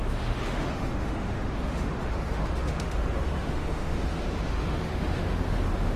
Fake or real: fake